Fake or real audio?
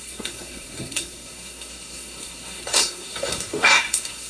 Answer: fake